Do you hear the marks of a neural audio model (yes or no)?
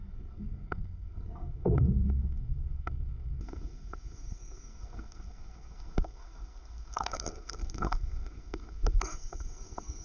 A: yes